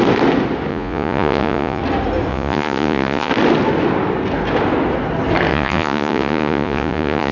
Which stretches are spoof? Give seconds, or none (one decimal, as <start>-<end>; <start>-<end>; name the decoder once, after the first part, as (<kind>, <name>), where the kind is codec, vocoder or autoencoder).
0.7-1.8 (vocoder, Vocos); 2.3-3.3; 5.5-7.3